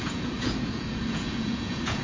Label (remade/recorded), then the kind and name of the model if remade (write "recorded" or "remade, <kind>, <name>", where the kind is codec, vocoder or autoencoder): remade, vocoder, Vocos